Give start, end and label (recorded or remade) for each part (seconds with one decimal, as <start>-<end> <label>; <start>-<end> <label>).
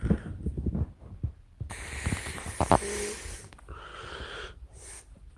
0.0-0.5 recorded; 0.5-1.0 remade; 1.0-3.9 recorded; 3.9-5.0 remade; 5.0-5.4 recorded